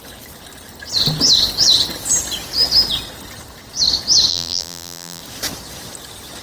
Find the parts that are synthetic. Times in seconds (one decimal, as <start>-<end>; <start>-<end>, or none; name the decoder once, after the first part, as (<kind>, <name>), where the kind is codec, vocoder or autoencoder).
4.3-5.2 (vocoder, BigVGAN v2)